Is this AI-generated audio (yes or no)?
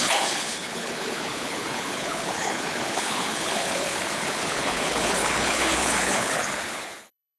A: yes